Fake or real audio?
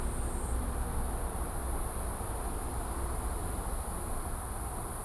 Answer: real